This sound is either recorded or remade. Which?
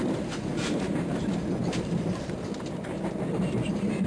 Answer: remade